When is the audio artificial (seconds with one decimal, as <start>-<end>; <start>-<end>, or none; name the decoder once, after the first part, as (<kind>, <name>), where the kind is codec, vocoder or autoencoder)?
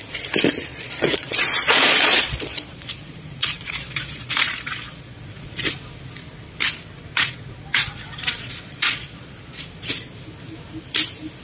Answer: 0.7-5.7 (vocoder, Vocos); 7.1-9.6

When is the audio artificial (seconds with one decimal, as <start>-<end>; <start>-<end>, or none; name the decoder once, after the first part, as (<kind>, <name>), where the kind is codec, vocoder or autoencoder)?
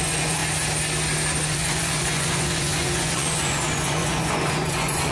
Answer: 0.0-0.4 (vocoder, Vocos); 1.5-5.1